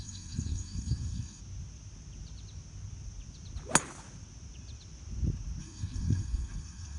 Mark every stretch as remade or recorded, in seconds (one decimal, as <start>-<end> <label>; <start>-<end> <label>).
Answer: 0.0-1.4 remade; 1.4-5.6 recorded; 5.6-7.0 remade